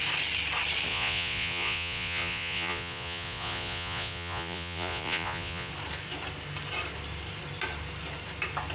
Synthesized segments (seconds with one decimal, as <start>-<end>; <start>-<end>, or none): 0.9-5.7